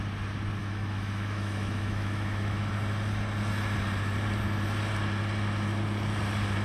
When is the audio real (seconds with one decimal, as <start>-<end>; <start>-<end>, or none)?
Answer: 0.0-0.6; 2.7-6.6